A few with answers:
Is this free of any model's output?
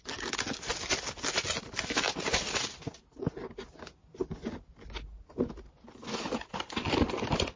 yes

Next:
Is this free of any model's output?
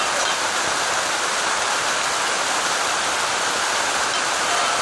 yes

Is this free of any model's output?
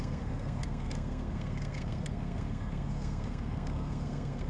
no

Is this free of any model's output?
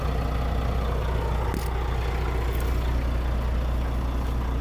yes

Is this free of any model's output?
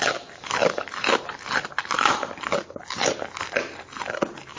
yes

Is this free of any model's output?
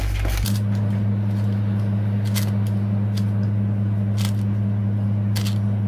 yes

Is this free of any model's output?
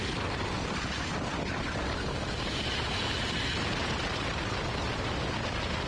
yes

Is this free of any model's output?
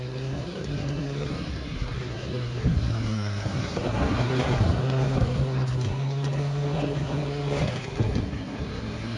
no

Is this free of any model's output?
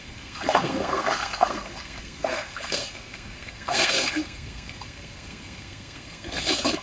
no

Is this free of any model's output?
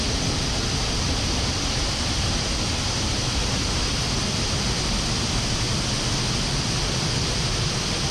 yes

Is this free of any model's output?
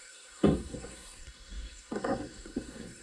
no